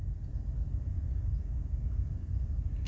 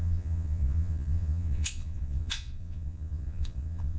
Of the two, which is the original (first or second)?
first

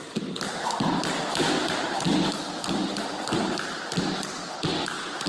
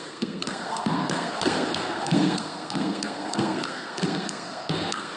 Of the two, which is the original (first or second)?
first